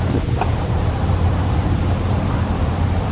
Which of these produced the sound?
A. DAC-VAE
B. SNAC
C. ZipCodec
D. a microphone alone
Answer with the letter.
D